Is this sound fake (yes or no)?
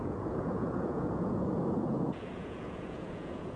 yes